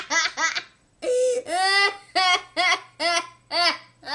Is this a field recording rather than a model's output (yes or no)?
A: yes